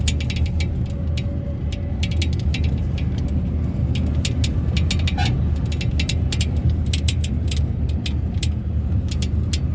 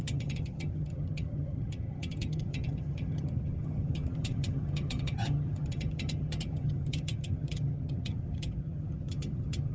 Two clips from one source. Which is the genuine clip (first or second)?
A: first